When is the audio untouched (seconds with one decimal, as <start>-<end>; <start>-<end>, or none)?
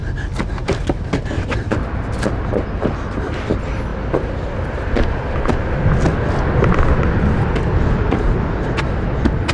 0.0-3.9; 5.5-9.5